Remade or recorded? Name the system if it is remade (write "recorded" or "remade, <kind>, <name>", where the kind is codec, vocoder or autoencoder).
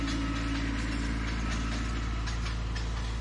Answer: recorded